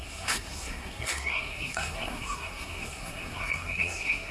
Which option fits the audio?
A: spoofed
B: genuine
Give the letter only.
A